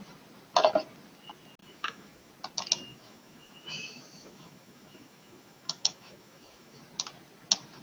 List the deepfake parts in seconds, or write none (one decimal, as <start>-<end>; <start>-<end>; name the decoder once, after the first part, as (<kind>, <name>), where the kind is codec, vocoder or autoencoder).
1.6-2.3 (autoencoder, DAC-VAE); 2.9-6.8